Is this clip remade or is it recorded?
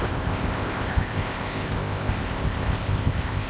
remade